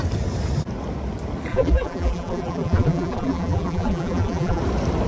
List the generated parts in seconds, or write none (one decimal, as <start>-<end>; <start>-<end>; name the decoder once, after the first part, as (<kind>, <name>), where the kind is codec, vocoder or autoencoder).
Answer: 1.5-4.6 (vocoder, BigVGAN v2)